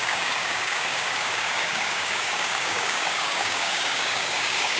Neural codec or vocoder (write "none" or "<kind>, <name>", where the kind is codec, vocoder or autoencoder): codec, DAC